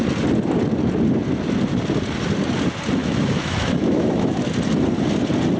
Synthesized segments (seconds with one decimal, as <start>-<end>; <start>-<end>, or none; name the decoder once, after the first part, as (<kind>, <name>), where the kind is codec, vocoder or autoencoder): 3.0-4.5 (autoencoder, DAC-VAE)